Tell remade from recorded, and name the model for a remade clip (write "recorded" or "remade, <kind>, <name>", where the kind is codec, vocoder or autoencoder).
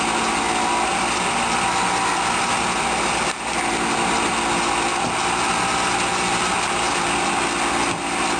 recorded